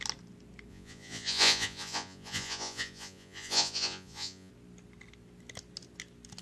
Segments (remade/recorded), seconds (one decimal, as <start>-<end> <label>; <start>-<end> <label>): 0.0-0.7 recorded; 0.7-4.5 remade; 4.5-6.4 recorded